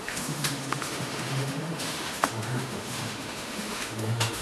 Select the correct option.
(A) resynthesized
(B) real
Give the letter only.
A